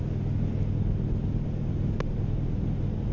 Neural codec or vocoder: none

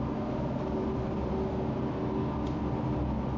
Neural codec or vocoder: none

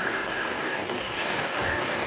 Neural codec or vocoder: codec, DAC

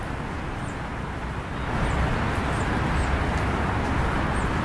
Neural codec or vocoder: none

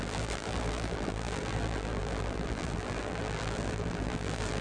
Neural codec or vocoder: vocoder, BigVGAN v2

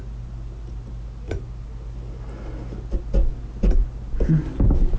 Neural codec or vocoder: none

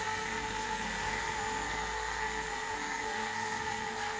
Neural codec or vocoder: codec, SNAC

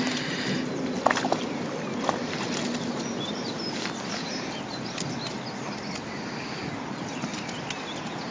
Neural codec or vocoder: none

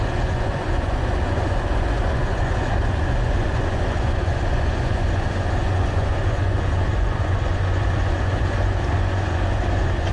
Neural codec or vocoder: vocoder, Vocos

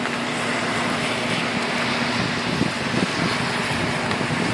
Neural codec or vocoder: none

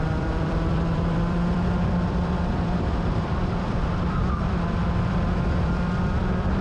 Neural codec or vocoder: vocoder, BigVGAN v2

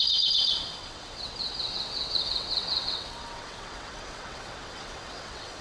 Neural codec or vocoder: vocoder, WaveNeXt